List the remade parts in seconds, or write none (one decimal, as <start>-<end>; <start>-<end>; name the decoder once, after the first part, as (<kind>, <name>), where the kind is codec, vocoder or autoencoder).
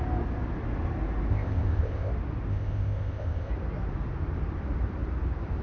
1.3-2.1 (codec, ZipCodec); 2.5-3.5